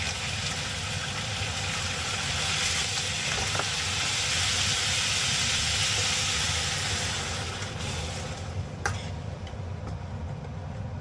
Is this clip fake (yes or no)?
no